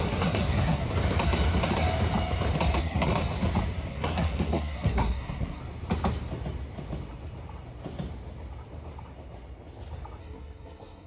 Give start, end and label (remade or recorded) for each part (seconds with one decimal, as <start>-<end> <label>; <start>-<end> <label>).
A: 0.0-0.8 remade; 0.8-2.8 recorded; 2.8-3.2 remade; 3.2-3.9 recorded; 3.9-5.6 remade; 5.6-10.2 recorded; 10.2-11.1 remade